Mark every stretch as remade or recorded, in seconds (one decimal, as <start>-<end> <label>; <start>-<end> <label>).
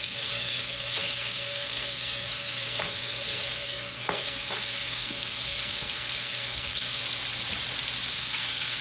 0.0-7.0 remade; 7.0-8.1 recorded; 8.1-8.8 remade